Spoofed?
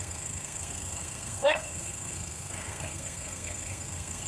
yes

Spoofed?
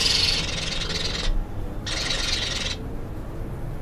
no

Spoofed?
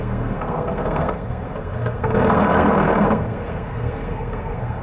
yes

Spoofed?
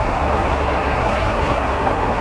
yes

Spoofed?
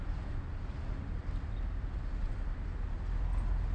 no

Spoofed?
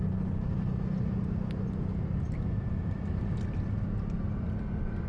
no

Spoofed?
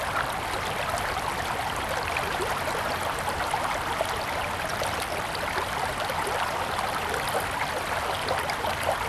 no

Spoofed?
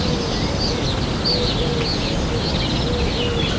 no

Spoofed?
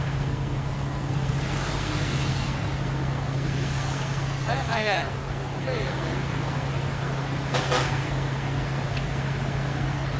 yes